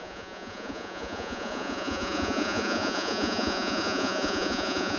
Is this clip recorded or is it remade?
remade